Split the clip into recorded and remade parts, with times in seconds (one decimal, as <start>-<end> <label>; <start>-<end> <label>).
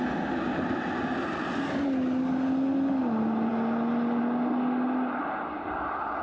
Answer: 0.0-6.2 recorded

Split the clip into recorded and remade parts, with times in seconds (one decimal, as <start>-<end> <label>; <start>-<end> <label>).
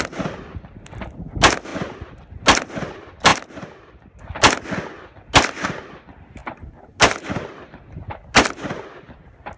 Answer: 0.0-9.6 recorded